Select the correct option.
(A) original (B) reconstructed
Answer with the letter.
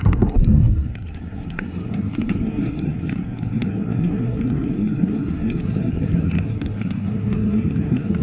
B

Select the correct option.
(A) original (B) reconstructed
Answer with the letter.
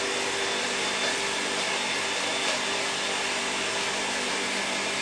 A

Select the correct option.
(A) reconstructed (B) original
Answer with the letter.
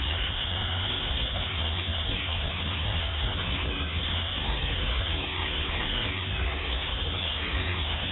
A